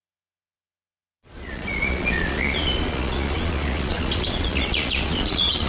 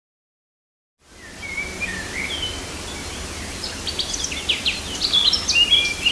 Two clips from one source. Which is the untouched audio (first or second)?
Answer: second